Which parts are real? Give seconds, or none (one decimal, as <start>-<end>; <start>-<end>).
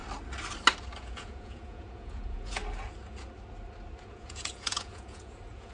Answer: 0.0-1.0; 2.6-4.0